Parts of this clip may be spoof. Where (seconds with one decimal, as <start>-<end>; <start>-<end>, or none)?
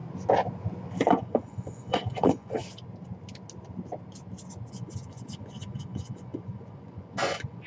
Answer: 1.1-2.6; 4.7-7.7